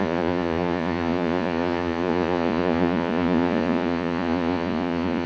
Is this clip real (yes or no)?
no